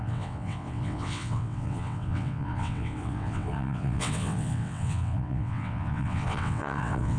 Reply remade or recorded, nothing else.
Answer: remade